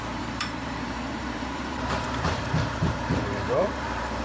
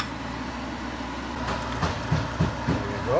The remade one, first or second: first